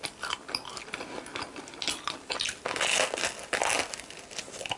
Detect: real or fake real